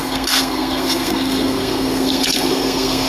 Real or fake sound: fake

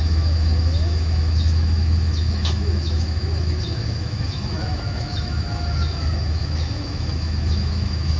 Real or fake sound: fake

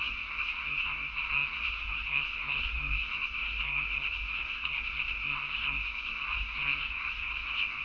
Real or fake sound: fake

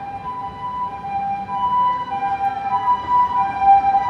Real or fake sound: real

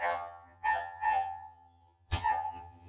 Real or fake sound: fake